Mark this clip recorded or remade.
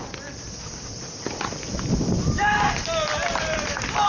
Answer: remade